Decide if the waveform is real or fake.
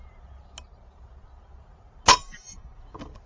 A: real